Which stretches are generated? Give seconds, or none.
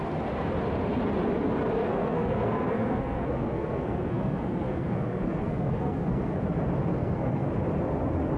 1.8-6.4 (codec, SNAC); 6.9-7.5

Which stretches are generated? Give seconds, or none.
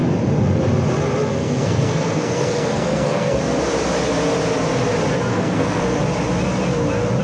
1.4-3.4 (codec, SNAC); 5.3-6.0